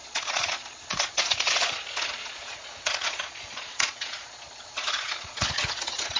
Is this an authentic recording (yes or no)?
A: no